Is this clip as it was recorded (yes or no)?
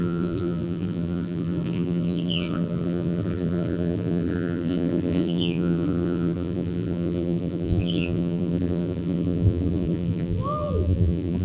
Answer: no